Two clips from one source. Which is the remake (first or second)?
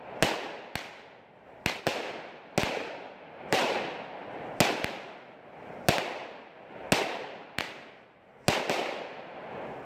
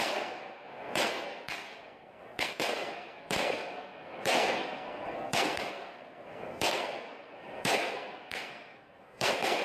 second